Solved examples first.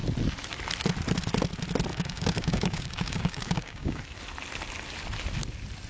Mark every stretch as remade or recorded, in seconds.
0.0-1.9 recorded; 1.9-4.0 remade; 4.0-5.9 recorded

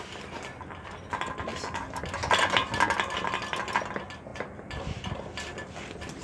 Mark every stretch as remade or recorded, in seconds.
0.0-6.2 recorded

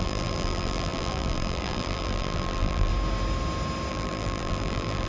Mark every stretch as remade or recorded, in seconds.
0.0-2.9 remade; 2.9-3.9 recorded; 3.9-5.1 remade

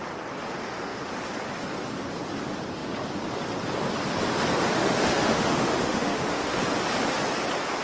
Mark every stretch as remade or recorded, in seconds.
0.0-4.8 recorded; 4.8-6.6 remade; 6.6-7.8 recorded